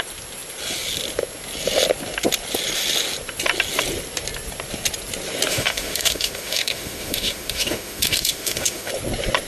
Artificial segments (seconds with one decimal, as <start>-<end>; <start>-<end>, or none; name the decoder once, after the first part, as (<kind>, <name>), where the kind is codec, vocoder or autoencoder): 5.5-8.9 (autoencoder, DAC-VAE)